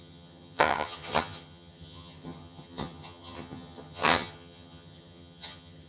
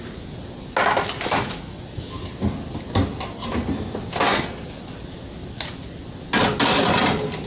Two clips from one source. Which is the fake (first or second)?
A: first